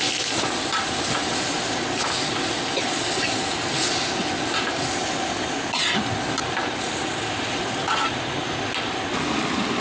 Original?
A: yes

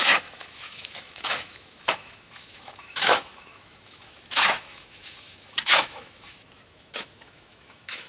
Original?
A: no